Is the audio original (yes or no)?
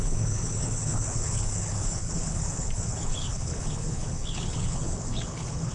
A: no